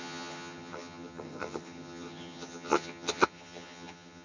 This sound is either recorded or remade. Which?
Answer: remade